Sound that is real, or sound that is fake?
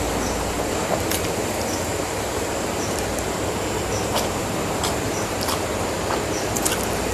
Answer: fake